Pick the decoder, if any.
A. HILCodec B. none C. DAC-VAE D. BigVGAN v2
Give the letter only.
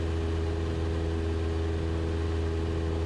B